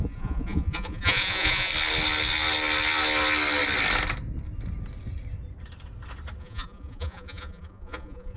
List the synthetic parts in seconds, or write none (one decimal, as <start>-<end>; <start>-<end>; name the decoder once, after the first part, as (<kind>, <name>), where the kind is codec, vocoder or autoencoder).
0.0-1.7 (vocoder, Vocos); 6.4-8.4